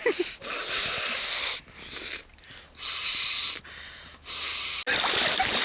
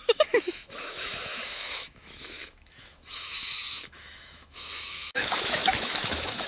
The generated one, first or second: second